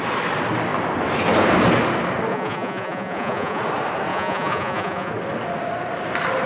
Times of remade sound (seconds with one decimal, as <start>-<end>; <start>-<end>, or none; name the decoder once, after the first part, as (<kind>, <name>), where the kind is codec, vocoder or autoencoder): 2.3-3.6 (vocoder, Vocos); 4.1-5.1